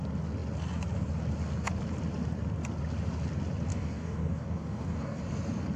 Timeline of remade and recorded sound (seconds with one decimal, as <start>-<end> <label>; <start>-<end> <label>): 0.0-3.7 recorded; 3.7-5.2 remade; 5.2-5.8 recorded